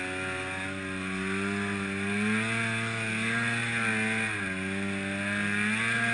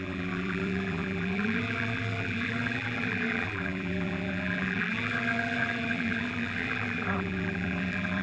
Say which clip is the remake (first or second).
second